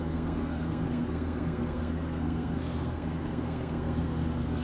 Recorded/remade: remade